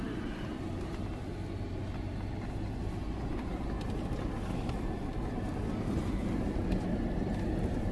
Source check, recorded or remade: recorded